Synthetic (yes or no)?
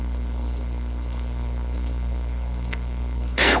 yes